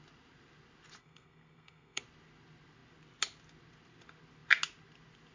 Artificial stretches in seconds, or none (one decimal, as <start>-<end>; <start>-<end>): 1.0-2.0